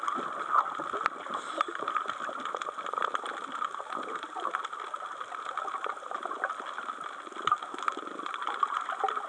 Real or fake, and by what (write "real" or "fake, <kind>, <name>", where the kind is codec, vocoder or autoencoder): real